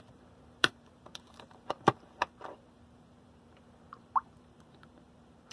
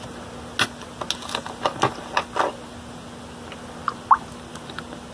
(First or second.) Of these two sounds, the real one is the second